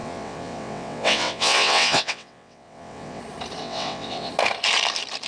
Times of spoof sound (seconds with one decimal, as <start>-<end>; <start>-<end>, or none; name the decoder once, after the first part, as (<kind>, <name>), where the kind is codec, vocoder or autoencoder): 0.0-3.2 (vocoder, WaveNeXt); 3.6-4.3